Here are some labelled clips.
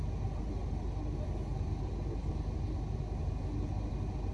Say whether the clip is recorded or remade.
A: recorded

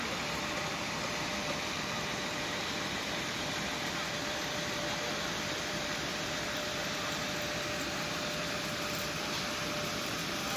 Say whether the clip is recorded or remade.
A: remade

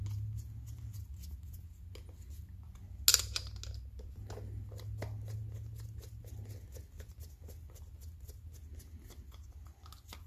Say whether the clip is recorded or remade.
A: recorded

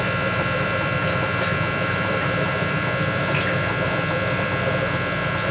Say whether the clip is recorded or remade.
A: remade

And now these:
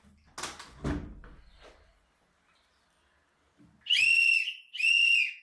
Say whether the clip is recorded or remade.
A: recorded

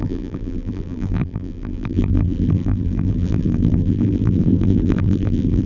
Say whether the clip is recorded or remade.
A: remade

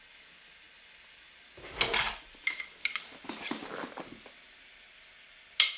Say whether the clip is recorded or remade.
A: recorded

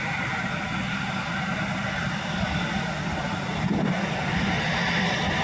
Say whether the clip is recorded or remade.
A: remade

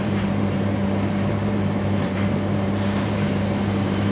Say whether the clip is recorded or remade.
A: remade